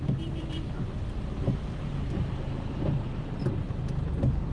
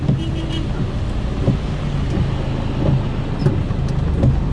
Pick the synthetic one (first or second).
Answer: first